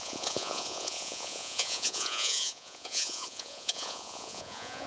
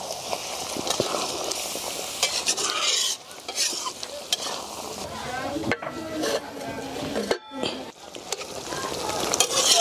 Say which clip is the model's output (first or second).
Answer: first